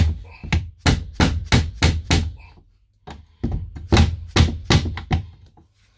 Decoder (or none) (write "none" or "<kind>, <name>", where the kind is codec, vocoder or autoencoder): none